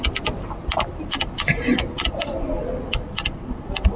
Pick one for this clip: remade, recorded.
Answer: recorded